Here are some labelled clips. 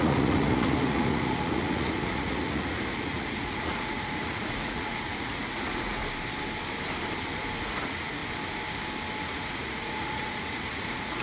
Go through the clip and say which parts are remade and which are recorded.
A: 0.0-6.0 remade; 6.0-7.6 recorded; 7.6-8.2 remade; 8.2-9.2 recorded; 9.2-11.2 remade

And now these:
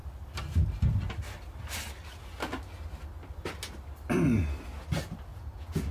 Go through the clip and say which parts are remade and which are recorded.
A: 0.0-5.3 recorded; 5.3-5.9 remade

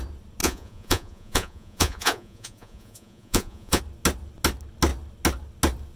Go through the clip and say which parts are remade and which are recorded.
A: 0.0-0.4 recorded; 0.4-3.8 remade; 3.8-6.0 recorded

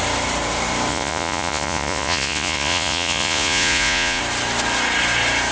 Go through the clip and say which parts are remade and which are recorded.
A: 0.0-0.9 recorded; 0.9-4.2 remade; 4.2-5.5 recorded

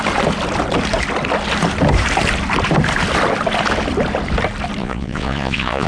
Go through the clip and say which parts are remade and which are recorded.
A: 0.0-4.8 recorded; 4.8-5.9 remade

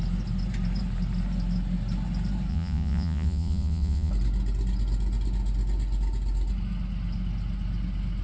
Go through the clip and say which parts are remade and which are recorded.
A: 0.0-2.5 recorded; 2.5-4.1 remade; 4.1-8.2 recorded

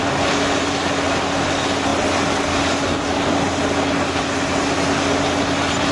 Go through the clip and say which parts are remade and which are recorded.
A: 0.0-5.9 recorded

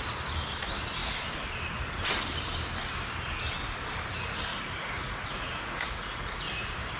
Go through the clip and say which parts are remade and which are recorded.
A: 0.0-4.5 recorded; 4.5-6.5 remade; 6.5-7.0 recorded